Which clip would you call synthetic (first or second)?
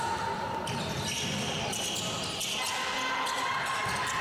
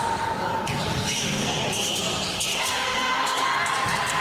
second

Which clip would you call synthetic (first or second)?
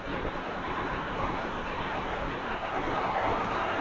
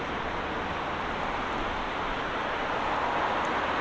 first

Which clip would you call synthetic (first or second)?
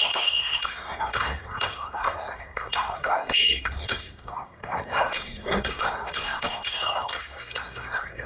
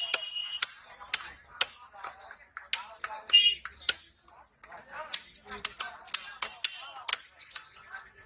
first